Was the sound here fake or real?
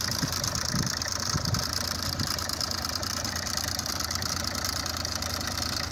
real